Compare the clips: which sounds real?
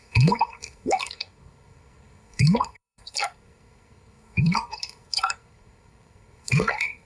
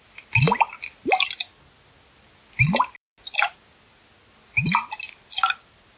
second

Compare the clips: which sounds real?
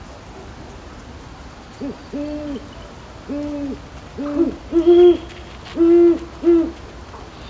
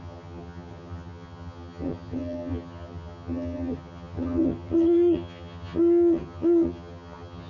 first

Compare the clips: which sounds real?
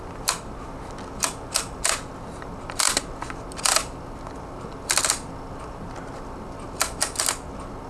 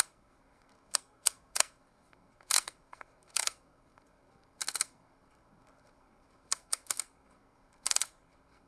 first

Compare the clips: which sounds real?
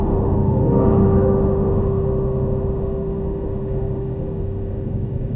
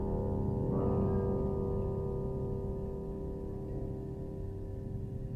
second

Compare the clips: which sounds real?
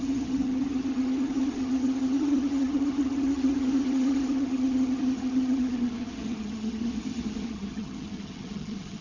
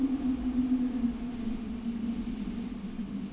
second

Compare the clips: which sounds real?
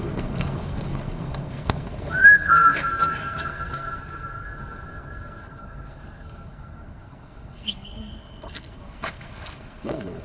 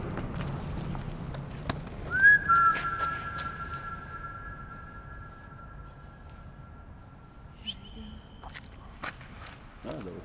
second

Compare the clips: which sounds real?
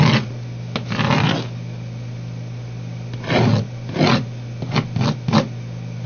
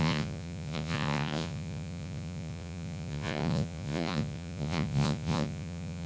first